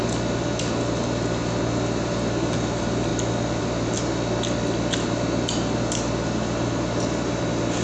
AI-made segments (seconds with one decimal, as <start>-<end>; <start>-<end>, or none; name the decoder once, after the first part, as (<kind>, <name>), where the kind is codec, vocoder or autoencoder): none